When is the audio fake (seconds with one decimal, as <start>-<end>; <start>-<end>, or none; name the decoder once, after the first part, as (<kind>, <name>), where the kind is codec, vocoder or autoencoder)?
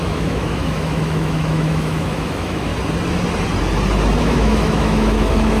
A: 0.0-2.7 (autoencoder, DAC-VAE); 4.2-5.6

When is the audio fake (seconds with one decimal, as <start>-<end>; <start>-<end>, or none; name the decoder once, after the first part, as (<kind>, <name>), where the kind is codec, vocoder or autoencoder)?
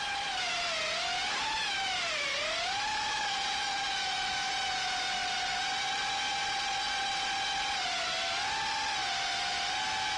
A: 2.9-4.5 (autoencoder, DAC-VAE)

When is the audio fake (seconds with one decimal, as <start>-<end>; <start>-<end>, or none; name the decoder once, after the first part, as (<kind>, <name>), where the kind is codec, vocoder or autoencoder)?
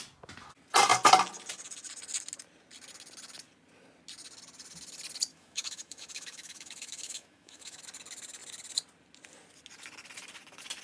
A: 5.3-7.8 (autoencoder, DAC-VAE)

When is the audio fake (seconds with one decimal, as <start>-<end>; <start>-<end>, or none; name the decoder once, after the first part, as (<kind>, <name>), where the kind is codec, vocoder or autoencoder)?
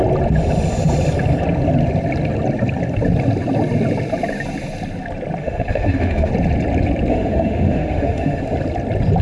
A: 5.4-6.3 (autoencoder, DAC-VAE); 7.1-8.4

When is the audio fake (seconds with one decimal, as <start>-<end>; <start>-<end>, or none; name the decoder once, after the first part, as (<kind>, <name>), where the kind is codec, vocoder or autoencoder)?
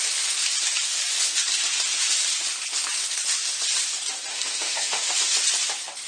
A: 4.3-5.1 (autoencoder, DAC-VAE)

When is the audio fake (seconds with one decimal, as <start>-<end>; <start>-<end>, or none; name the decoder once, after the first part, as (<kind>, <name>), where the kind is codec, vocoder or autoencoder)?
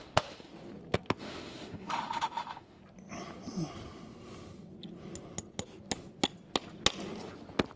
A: 0.0-0.5 (autoencoder, DAC-VAE); 1.2-2.8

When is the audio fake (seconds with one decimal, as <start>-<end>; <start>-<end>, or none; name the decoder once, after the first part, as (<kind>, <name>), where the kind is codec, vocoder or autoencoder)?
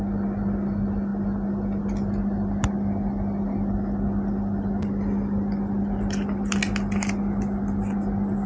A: none